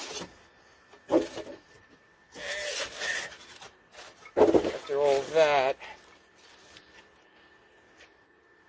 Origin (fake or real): real